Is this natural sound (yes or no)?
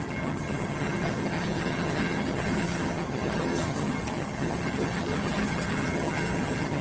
no